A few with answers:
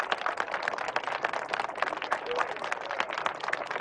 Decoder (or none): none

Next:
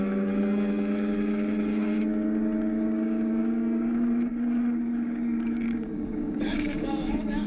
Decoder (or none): codec, DAC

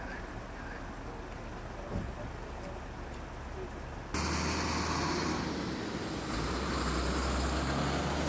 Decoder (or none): none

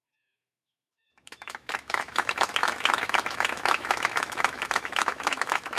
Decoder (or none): autoencoder, DAC-VAE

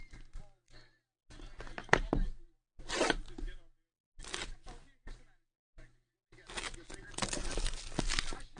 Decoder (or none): none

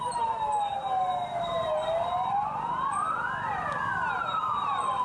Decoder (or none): none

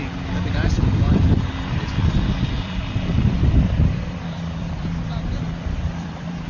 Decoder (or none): vocoder, BigVGAN v2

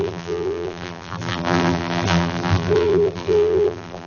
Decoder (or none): vocoder, BigVGAN v2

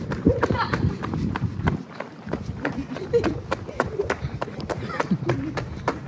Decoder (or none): vocoder, BigVGAN v2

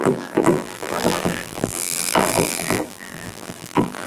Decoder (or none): vocoder, BigVGAN v2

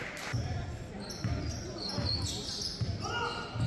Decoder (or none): none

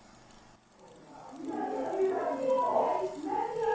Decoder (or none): none